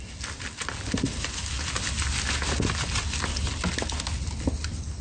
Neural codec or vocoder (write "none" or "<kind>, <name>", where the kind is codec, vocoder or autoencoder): none